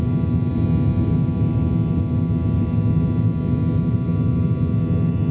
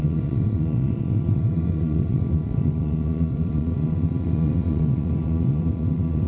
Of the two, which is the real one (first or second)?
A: first